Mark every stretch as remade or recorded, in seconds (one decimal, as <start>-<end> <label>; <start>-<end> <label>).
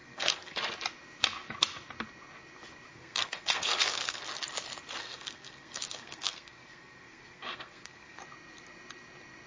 0.0-0.6 remade; 0.6-2.9 recorded; 2.9-4.2 remade; 4.2-5.0 recorded; 5.0-8.2 remade; 8.2-9.5 recorded